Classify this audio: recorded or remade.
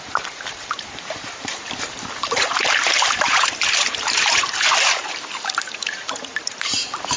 remade